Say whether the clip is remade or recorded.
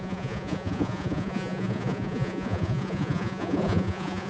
remade